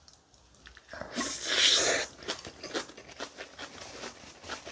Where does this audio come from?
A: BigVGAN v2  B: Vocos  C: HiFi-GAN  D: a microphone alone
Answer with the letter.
D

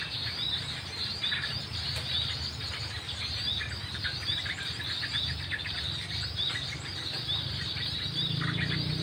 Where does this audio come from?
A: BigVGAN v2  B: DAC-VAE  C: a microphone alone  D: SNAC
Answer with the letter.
C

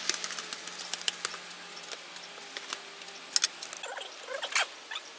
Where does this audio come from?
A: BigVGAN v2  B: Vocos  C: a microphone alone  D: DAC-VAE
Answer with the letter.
C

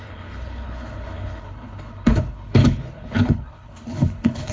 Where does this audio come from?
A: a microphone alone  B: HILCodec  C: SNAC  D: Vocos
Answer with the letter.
B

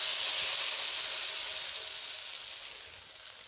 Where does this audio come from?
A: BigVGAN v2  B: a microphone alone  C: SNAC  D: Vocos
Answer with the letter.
B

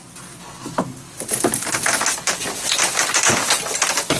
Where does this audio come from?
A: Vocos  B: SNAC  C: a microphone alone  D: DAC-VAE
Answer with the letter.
C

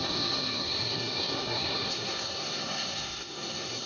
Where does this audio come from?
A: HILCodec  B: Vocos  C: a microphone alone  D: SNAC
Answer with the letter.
D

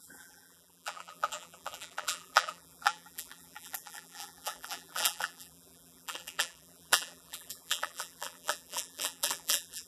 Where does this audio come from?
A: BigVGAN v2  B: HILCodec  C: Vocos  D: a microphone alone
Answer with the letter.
A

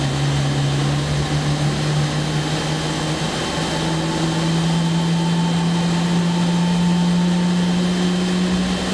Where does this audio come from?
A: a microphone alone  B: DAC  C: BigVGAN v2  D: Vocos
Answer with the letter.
A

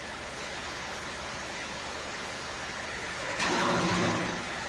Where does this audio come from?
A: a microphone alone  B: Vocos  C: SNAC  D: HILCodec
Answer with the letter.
D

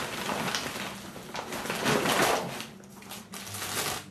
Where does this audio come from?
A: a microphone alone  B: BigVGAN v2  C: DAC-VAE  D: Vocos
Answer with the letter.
A